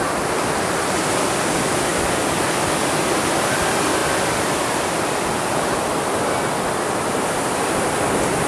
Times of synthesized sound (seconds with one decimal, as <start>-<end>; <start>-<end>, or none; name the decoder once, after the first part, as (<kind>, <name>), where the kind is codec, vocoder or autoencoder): 0.0-1.9 (vocoder, BigVGAN v2); 2.6-8.5